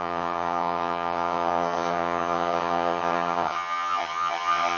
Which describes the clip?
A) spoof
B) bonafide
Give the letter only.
A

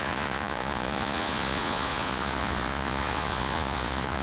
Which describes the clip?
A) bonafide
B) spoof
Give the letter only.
B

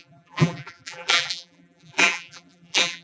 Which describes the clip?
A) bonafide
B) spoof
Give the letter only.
B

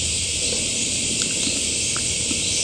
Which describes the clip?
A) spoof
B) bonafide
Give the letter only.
B